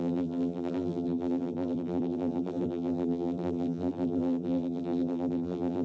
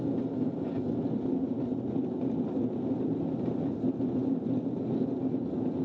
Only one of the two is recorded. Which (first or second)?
second